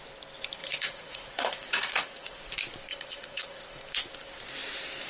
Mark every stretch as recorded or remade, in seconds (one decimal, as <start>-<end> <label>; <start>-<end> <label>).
0.0-0.6 recorded; 0.6-2.4 remade; 2.4-2.9 recorded; 2.9-3.8 remade; 3.8-5.1 recorded